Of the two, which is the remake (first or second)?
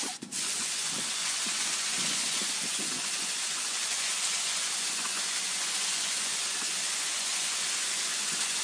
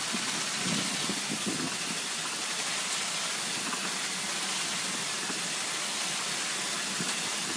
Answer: first